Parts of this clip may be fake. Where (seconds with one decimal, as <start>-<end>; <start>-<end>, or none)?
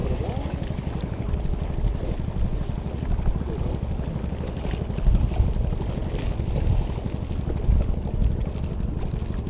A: none